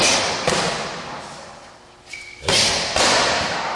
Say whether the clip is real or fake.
real